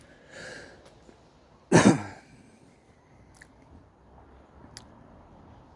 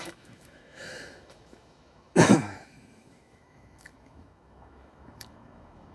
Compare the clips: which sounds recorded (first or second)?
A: first